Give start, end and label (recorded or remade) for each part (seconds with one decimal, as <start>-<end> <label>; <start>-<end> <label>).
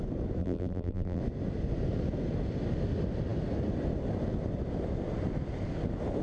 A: 0.0-0.4 recorded; 0.4-1.2 remade; 1.2-6.2 recorded